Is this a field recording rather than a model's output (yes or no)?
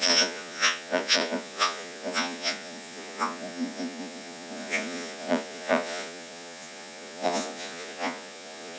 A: no